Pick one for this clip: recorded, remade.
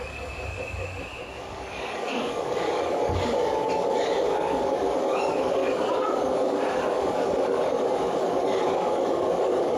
remade